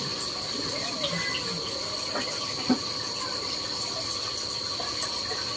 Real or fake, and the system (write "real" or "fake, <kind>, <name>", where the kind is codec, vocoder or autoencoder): real